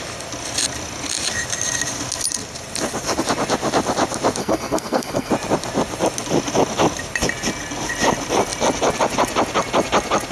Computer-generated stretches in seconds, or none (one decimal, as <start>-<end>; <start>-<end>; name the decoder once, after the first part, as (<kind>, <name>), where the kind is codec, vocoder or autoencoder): 4.4-5.3 (codec, SNAC)